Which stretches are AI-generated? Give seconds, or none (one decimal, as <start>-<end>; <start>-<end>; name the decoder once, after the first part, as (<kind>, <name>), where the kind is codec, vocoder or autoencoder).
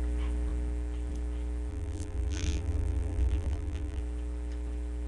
1.7-4.0 (vocoder, BigVGAN v2)